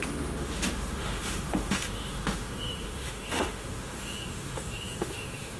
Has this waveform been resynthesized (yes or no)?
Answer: yes